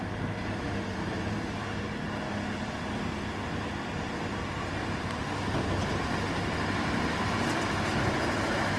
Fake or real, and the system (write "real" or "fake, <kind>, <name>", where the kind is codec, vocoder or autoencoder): real